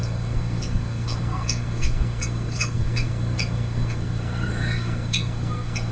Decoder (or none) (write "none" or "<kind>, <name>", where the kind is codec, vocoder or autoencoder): codec, SNAC